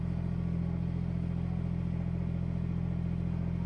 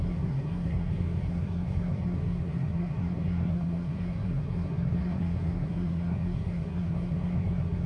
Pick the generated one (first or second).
second